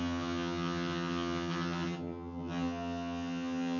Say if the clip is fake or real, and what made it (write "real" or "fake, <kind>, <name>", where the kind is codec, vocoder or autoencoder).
fake, vocoder, HiFi-GAN